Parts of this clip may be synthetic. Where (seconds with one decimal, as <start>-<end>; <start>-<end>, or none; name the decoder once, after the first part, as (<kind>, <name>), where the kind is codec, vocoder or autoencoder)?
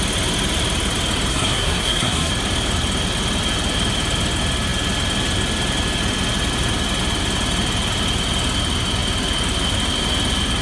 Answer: 1.3-2.3 (codec, SNAC)